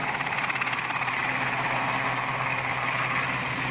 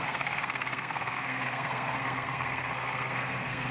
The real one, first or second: first